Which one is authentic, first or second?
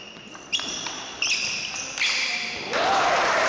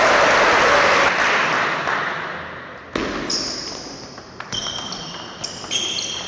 second